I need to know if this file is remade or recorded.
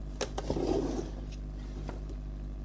recorded